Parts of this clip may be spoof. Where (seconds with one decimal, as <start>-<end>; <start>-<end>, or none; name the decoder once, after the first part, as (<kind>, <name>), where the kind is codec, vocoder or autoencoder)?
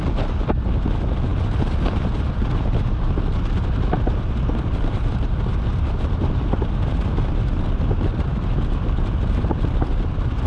none